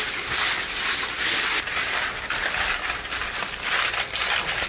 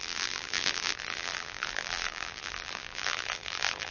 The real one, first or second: first